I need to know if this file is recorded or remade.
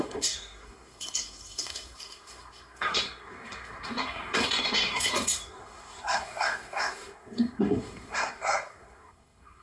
remade